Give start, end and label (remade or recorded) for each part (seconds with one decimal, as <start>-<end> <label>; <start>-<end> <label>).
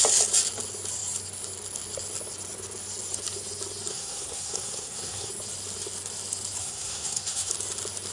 0.0-3.9 recorded; 3.9-5.3 remade; 5.3-6.6 recorded; 6.6-7.5 remade; 7.5-8.1 recorded